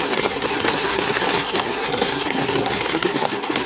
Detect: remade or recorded remade